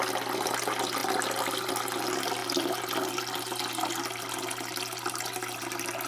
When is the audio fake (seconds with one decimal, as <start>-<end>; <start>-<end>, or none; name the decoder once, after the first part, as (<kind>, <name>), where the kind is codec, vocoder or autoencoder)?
1.0-1.7 (vocoder, BigVGAN v2)